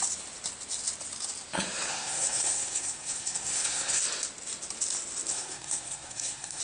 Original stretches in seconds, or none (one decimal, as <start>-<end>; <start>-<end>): 0.0-1.9; 4.0-5.3